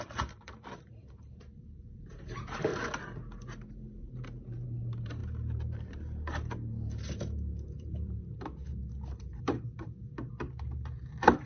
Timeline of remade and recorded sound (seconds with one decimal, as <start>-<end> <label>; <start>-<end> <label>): 0.0-2.7 remade; 2.7-3.7 recorded; 3.7-11.5 remade